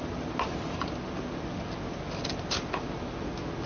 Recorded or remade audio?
recorded